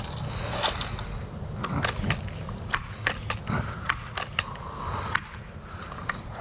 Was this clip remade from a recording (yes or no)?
no